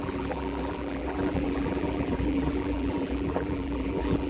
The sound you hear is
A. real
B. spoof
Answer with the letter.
B